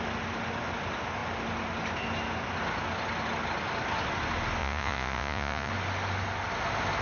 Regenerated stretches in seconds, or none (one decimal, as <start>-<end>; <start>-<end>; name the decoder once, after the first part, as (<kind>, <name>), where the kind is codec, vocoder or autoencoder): 4.6-5.7 (vocoder, Vocos)